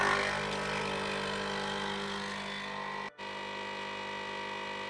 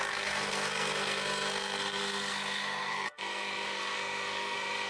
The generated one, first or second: second